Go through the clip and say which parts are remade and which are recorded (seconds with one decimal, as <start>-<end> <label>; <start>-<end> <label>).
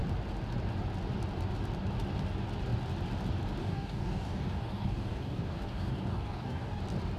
0.0-3.6 recorded; 3.6-6.8 remade; 6.8-7.2 recorded